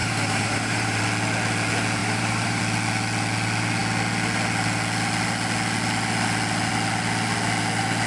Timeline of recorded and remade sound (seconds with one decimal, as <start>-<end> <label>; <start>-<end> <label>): 0.0-1.0 remade; 1.0-2.0 recorded; 2.0-2.6 remade; 2.6-8.1 recorded